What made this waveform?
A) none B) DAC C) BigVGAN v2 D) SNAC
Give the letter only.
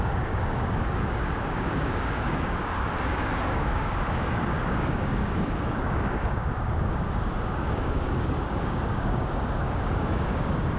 B